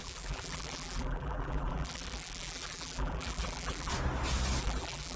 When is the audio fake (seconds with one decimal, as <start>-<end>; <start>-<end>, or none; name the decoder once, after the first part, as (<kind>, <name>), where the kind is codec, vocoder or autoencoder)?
0.0-3.9 (vocoder, BigVGAN v2); 4.6-5.2